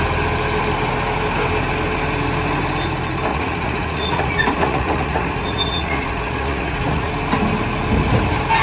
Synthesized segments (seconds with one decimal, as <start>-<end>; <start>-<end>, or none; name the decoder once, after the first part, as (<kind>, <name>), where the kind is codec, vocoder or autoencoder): 3.3-7.1 (vocoder, Vocos)